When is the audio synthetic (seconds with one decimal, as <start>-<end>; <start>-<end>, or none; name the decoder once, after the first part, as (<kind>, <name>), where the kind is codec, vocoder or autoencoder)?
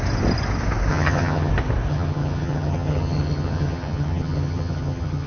0.9-1.5 (vocoder, HiFi-GAN); 1.9-5.3